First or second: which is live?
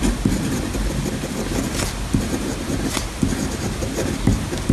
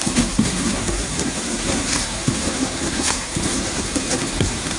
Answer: first